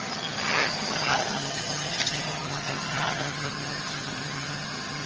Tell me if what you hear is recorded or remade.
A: remade